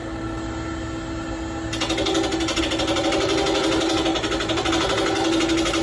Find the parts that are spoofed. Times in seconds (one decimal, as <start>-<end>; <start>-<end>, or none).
none